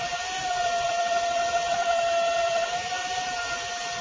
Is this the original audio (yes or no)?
yes